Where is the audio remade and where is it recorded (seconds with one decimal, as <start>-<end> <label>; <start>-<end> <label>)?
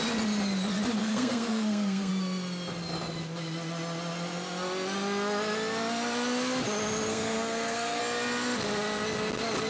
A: 0.0-1.0 recorded; 1.0-2.1 remade; 2.1-7.1 recorded; 7.1-8.0 remade; 8.0-9.7 recorded